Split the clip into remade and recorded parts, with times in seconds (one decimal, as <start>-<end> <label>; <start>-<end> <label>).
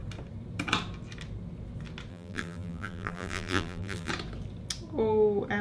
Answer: 0.0-2.1 recorded; 2.1-4.1 remade; 4.1-5.6 recorded